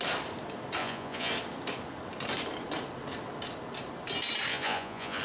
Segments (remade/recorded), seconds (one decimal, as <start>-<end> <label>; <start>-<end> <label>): 0.0-0.8 recorded; 0.8-1.3 remade; 1.3-4.5 recorded; 4.5-5.2 remade